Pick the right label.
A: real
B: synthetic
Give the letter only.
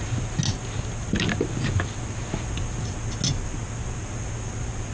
A